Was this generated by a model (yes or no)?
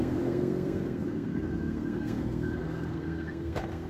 yes